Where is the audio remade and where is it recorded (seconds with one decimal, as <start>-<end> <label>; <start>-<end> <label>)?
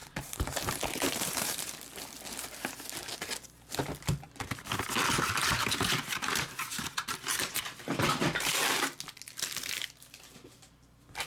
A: 0.0-1.7 remade; 1.7-5.4 recorded; 5.4-8.5 remade; 8.5-11.3 recorded